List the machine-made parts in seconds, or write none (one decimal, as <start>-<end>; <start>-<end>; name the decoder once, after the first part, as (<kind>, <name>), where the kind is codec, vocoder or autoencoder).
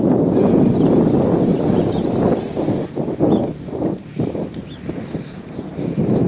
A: none